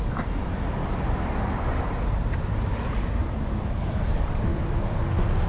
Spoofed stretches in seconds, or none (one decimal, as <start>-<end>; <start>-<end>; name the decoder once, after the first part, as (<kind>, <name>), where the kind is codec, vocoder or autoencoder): 0.0-0.8 (vocoder, BigVGAN v2); 4.1-4.5